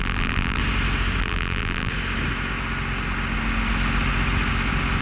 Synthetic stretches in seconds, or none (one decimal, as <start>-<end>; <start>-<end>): 0.0-0.6; 1.2-1.9